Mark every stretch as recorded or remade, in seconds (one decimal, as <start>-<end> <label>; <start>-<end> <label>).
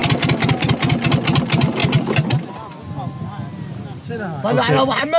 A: 0.0-0.7 remade; 0.7-1.8 recorded; 1.8-2.3 remade; 2.3-5.2 recorded